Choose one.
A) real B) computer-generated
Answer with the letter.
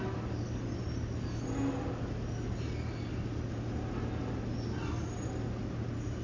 A